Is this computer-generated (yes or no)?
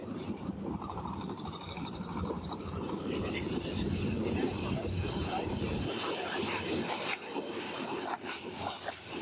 yes